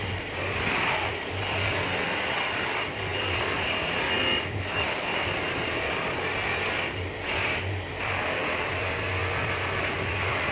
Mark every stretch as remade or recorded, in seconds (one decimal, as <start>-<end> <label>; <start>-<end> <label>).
0.0-10.5 recorded